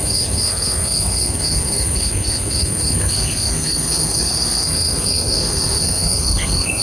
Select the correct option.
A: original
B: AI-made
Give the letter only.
B